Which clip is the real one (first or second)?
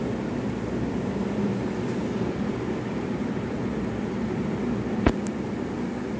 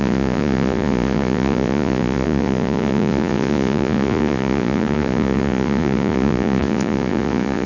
first